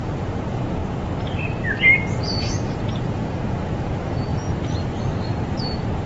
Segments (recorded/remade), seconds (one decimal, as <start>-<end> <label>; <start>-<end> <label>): 0.0-0.8 remade; 0.8-2.1 recorded; 2.1-4.3 remade; 4.3-6.1 recorded